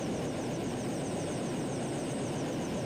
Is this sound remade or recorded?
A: recorded